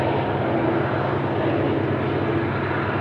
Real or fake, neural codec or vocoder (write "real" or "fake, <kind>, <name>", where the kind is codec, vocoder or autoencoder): real